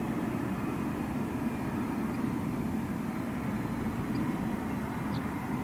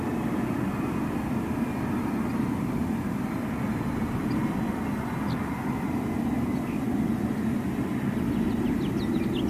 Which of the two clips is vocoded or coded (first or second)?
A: first